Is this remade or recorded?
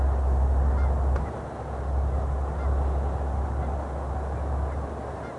recorded